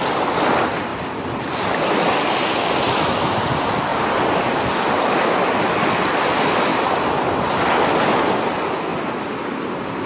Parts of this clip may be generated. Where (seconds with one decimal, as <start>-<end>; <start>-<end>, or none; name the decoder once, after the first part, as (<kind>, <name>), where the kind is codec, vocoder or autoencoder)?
3.9-4.6 (vocoder, BigVGAN v2); 6.7-7.6

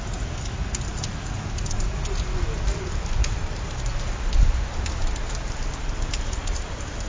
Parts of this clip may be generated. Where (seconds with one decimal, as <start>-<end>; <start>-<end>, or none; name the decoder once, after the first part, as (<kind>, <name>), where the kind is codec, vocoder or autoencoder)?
0.9-1.6 (vocoder, BigVGAN v2); 2.7-7.1